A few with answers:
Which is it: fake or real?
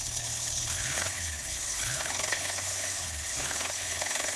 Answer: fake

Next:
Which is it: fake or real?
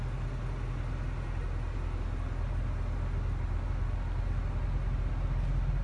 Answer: real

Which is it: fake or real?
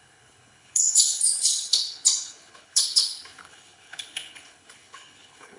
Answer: fake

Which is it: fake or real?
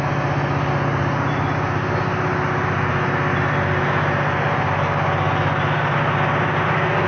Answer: real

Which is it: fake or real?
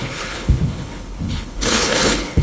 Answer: fake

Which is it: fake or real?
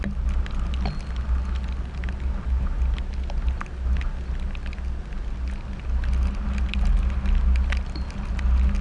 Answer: real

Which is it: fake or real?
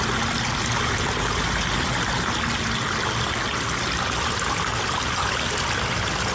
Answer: real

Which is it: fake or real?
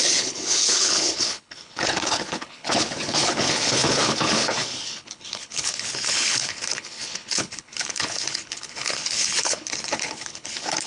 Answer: fake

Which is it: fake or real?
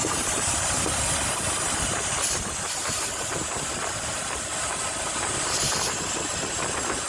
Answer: real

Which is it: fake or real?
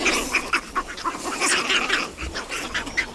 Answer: real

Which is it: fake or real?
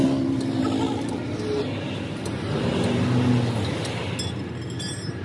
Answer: real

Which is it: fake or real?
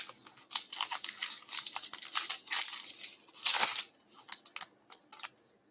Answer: real